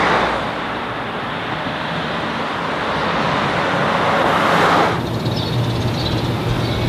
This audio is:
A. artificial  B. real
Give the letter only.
B